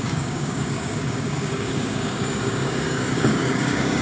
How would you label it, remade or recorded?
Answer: remade